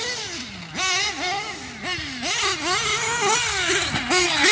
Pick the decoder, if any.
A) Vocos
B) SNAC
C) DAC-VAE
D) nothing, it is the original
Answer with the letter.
D